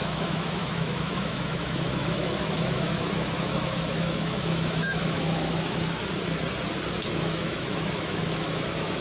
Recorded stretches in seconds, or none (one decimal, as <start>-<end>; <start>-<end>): 6.0-7.1